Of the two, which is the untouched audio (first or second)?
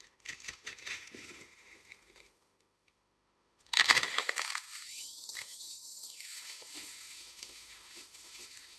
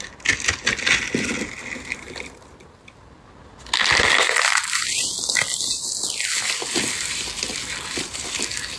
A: second